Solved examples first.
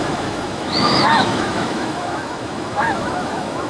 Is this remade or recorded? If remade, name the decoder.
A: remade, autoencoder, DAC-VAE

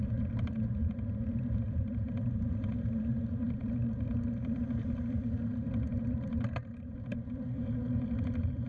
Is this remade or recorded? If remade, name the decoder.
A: remade, vocoder, BigVGAN v2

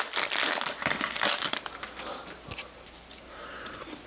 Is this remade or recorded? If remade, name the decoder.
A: remade, vocoder, BigVGAN v2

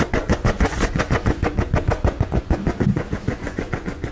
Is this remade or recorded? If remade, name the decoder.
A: remade, vocoder, Vocos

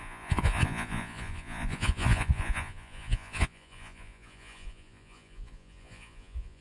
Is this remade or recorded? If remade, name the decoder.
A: remade, vocoder, Vocos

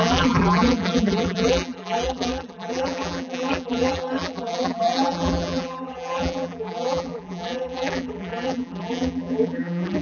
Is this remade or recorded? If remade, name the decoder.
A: remade, vocoder, BigVGAN v2